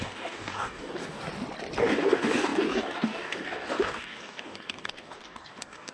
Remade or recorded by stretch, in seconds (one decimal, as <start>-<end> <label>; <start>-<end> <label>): 0.0-1.2 remade; 1.2-1.8 recorded; 1.8-5.9 remade